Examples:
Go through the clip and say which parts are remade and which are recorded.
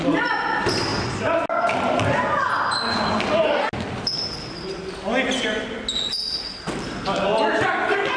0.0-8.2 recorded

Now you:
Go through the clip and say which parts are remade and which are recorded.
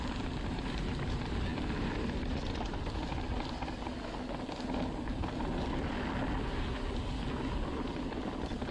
0.0-8.7 recorded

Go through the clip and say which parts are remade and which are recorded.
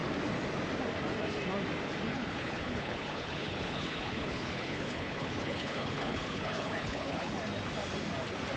0.0-2.1 recorded; 2.1-7.3 remade; 7.3-8.6 recorded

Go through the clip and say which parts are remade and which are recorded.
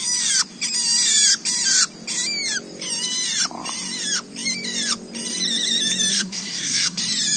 0.0-6.1 recorded; 6.1-7.0 remade; 7.0-7.4 recorded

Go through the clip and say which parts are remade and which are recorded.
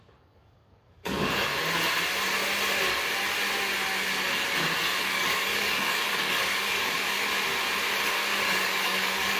0.0-1.5 remade; 1.5-5.0 recorded; 5.0-7.3 remade; 7.3-8.1 recorded; 8.1-9.4 remade